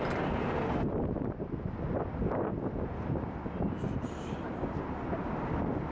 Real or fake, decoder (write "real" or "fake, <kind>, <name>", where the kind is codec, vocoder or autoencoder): real